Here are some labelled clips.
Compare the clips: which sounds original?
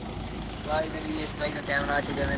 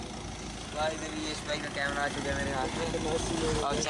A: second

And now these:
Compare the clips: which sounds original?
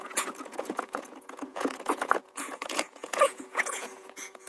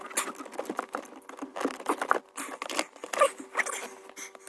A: second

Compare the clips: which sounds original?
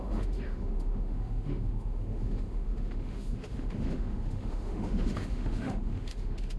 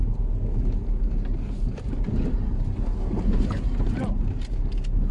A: second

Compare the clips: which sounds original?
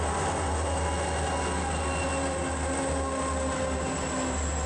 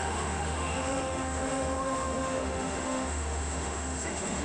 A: first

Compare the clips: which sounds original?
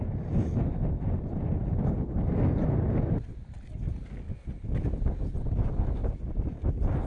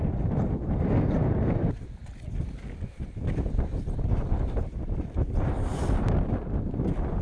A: first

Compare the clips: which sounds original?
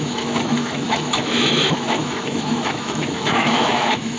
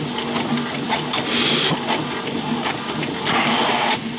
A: second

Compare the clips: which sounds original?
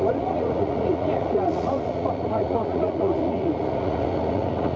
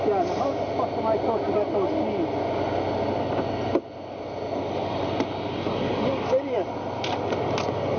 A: second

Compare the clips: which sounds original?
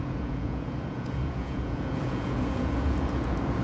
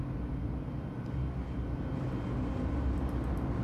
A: second